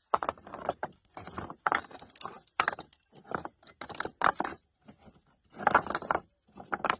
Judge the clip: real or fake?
real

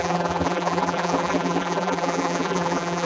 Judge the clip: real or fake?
fake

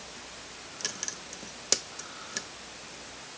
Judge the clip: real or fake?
real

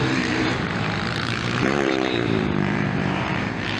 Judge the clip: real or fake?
fake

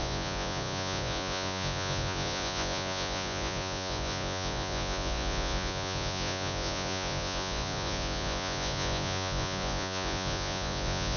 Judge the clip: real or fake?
fake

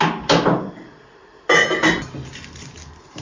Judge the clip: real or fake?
real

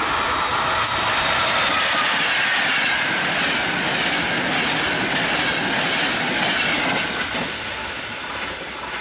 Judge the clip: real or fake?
real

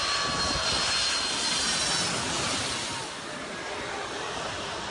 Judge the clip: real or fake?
real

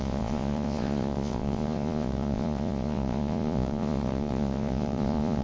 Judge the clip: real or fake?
fake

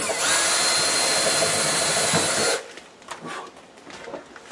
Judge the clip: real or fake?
real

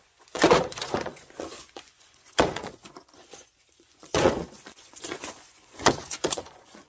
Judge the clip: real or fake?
fake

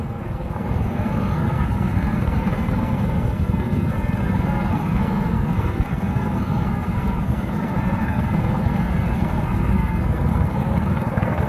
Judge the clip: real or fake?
fake